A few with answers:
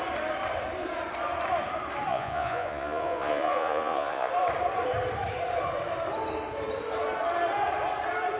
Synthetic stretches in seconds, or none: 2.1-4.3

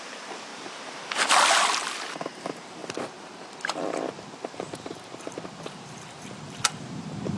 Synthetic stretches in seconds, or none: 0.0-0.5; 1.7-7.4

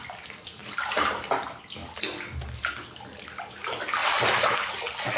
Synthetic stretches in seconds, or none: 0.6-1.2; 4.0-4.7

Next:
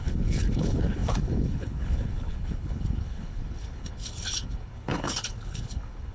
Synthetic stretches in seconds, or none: 0.0-6.1